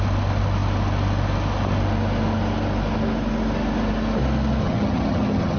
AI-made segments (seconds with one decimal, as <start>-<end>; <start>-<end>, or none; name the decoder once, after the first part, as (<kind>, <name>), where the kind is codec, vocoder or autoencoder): 4.6-5.6 (vocoder, HiFi-GAN)